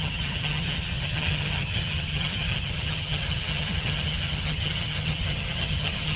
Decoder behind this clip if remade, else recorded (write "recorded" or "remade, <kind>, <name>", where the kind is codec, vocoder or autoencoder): remade, vocoder, HiFi-GAN